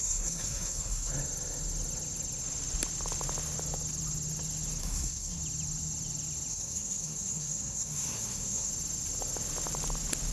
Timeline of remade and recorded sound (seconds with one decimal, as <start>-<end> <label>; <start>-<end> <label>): 0.0-1.1 remade; 1.1-4.8 recorded; 4.8-5.4 remade; 5.4-6.5 recorded; 6.5-8.7 remade; 8.7-10.3 recorded